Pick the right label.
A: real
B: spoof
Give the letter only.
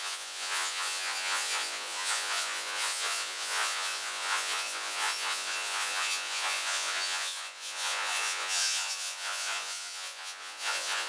B